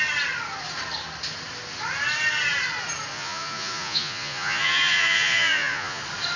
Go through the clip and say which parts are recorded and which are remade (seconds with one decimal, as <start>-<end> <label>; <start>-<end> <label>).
0.0-3.1 recorded; 3.1-6.0 remade; 6.0-6.4 recorded